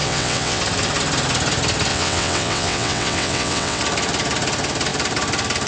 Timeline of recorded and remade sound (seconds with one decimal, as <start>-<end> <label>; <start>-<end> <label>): 0.0-0.6 remade; 0.6-1.9 recorded; 1.9-3.8 remade; 3.8-5.7 recorded